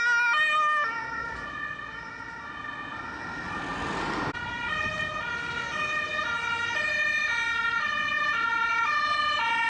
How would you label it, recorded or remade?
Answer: recorded